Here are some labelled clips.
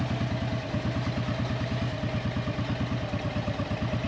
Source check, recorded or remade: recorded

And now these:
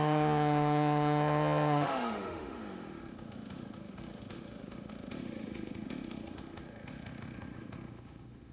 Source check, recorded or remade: remade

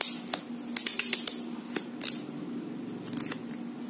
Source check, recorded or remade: recorded